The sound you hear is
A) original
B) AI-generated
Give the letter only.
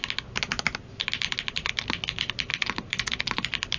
A